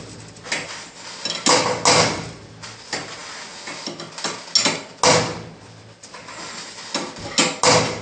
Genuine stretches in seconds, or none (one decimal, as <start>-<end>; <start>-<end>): 0.0-8.0

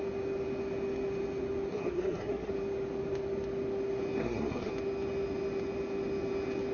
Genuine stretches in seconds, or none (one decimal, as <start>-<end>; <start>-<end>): 0.0-1.7; 2.5-4.2; 4.7-6.7

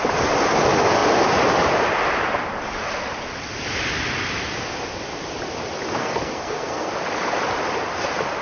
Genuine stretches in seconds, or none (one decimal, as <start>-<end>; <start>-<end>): 0.0-6.0; 6.9-8.4

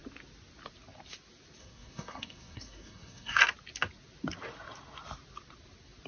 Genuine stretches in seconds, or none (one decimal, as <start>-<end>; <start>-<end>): 0.0-1.6; 3.4-6.1